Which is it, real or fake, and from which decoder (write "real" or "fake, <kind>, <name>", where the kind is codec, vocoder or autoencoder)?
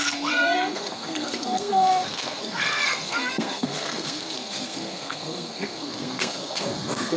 fake, codec, SNAC